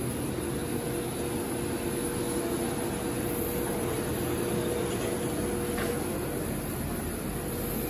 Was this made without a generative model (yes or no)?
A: yes